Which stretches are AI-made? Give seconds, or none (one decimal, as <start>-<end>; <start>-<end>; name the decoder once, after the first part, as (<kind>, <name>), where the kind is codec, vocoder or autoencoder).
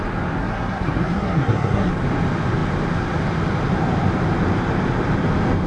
0.4-1.9 (codec, SNAC)